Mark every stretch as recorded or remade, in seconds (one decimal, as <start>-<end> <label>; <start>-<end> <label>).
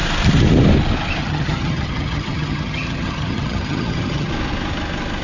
0.0-1.2 recorded; 1.2-4.3 remade; 4.3-5.2 recorded